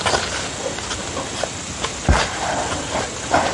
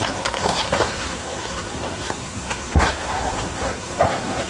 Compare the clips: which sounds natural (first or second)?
first